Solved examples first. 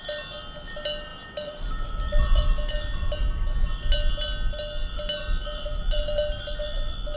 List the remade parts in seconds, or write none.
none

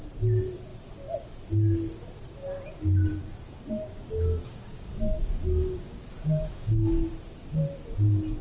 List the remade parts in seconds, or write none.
3.1-7.1 (codec, DAC)

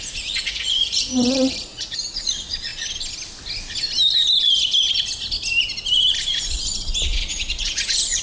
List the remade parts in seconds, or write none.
0.0-2.7 (vocoder, Vocos); 6.5-8.2

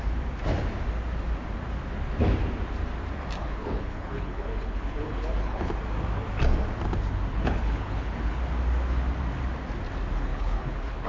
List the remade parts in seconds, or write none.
3.4-5.7 (codec, HILCodec); 7.3-8.4; 10.3-11.1

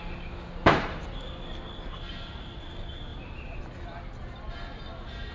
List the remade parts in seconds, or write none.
0.6-1.3 (vocoder, BigVGAN v2)

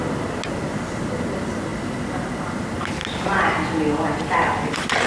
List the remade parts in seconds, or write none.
1.7-2.5 (vocoder, BigVGAN v2)